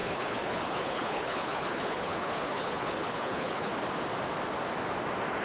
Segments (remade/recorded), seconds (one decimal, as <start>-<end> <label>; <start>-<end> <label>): 0.0-3.7 remade; 3.7-5.4 recorded